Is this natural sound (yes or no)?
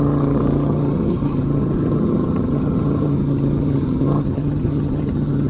no